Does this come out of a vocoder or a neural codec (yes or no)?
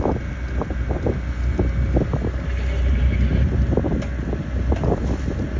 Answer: no